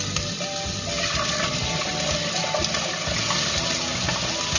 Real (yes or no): yes